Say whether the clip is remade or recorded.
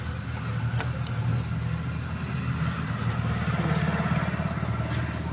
recorded